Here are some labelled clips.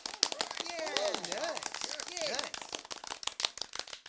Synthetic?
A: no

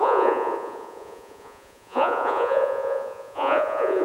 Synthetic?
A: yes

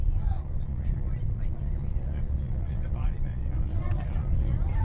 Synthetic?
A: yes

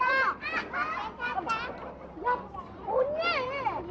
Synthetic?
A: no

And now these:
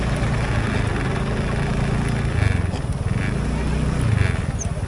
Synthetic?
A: no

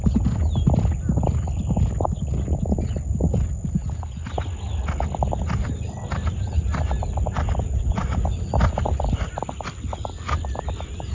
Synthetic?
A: no